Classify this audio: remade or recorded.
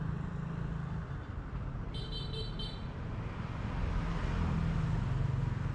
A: recorded